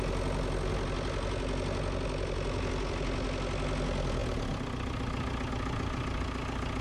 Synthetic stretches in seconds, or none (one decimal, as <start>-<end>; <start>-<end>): none